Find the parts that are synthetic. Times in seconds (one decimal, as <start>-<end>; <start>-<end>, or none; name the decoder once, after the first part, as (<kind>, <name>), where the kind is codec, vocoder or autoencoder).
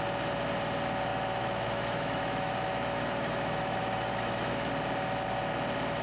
1.1-4.7 (autoencoder, DAC-VAE)